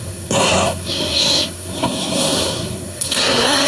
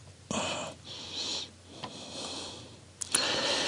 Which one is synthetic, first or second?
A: first